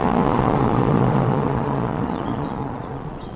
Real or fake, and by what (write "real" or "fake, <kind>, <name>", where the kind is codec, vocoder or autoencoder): fake, vocoder, Vocos